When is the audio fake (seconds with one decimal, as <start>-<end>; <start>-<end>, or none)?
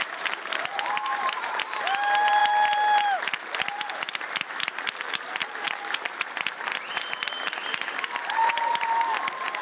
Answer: 0.0-2.4; 4.5-9.6